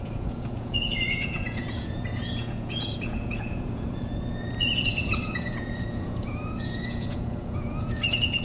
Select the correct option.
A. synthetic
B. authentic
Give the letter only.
A